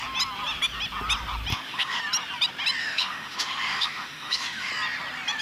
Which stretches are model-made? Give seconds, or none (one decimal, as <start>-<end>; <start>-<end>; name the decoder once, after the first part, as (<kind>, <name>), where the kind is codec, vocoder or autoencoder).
1.5-2.0 (autoencoder, DAC-VAE); 2.8-4.7